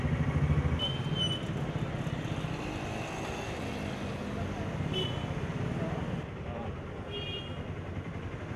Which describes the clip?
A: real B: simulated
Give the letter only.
A